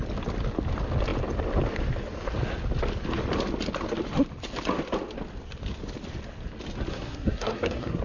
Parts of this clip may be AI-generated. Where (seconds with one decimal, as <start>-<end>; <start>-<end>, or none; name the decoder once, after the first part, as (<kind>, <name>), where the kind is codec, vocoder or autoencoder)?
6.9-8.0 (codec, SNAC)